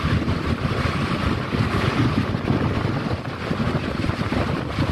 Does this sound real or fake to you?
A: real